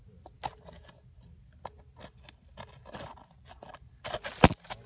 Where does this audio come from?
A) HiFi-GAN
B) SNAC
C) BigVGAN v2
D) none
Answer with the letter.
D